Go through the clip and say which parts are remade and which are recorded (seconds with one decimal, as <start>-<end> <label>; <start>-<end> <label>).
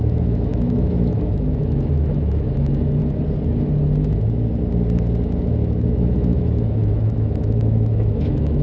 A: 0.0-3.0 remade; 3.0-5.4 recorded; 5.4-8.6 remade